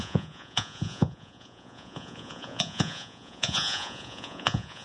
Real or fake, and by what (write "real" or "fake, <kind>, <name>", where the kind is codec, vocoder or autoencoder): fake, vocoder, Vocos